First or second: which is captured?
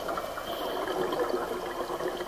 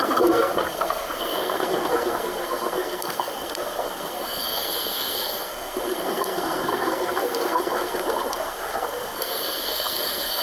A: first